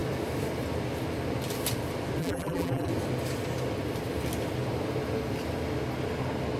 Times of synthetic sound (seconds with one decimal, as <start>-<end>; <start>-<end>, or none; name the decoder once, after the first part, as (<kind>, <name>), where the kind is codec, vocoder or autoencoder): 2.2-2.9 (vocoder, BigVGAN v2)